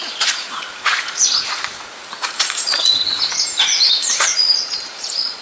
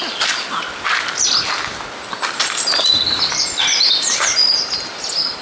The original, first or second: second